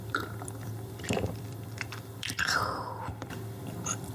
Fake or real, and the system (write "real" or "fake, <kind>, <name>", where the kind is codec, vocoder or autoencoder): fake, vocoder, BigVGAN v2